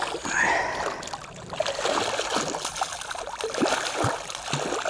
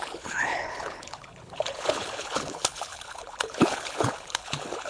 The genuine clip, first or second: first